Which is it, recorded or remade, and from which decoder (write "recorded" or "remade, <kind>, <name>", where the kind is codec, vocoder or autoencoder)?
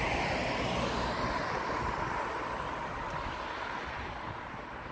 recorded